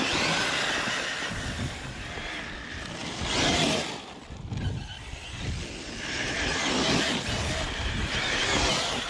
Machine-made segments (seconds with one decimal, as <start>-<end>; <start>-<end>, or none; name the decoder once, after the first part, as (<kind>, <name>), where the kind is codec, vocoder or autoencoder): none